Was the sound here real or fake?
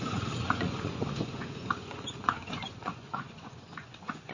fake